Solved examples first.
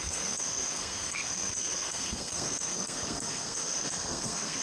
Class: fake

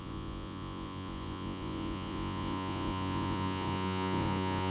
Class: fake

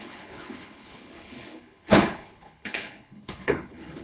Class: fake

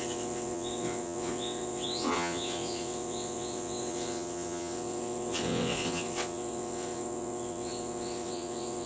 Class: fake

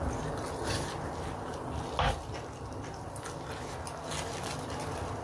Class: real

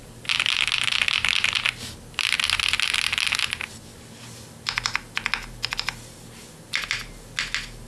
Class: real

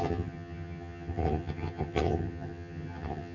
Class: fake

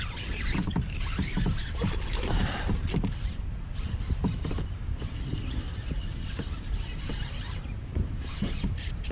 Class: fake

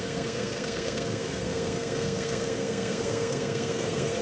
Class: fake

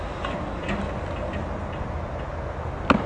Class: real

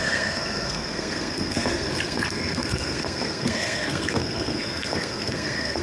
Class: fake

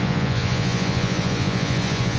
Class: fake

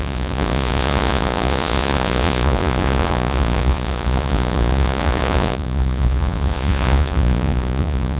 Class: fake